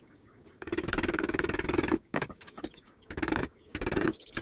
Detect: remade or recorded remade